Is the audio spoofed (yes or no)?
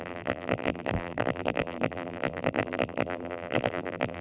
yes